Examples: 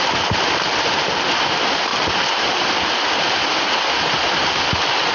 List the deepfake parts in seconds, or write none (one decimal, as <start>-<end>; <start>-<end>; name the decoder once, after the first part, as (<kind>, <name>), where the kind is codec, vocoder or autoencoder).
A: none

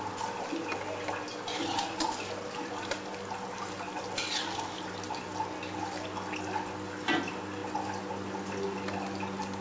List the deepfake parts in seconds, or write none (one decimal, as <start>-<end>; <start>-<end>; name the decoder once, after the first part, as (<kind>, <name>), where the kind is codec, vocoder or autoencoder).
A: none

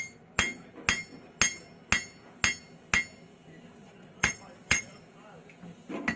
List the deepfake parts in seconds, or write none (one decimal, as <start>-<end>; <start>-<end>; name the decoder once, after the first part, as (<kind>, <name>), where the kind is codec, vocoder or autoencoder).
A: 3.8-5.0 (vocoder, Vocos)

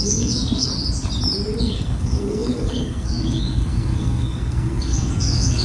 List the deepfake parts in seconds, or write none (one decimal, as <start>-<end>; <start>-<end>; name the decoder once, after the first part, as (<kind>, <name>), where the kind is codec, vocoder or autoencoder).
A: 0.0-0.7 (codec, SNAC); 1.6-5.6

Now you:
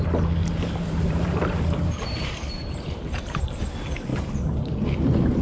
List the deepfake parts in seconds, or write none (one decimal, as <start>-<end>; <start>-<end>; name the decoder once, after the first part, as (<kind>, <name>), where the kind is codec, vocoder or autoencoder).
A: 0.4-3.6 (vocoder, BigVGAN v2)

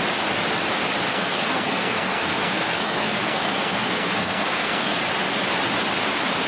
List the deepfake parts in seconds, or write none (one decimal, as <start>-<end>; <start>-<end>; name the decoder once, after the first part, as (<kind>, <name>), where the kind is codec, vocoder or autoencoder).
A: 1.1-5.0 (codec, SNAC)